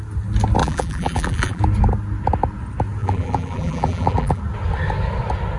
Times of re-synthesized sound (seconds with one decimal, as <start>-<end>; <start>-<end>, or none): 0.6-1.6; 3.0-4.4